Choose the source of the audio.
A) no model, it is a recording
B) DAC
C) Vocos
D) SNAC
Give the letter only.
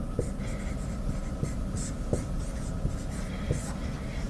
A